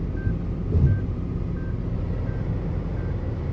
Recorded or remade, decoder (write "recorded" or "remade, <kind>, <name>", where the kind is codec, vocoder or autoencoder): recorded